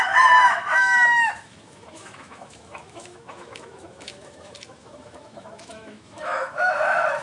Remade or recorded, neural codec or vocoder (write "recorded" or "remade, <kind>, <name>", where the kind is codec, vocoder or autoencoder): remade, autoencoder, DAC-VAE